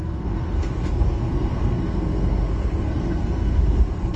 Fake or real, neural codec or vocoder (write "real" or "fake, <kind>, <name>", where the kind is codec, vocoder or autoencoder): fake, codec, SNAC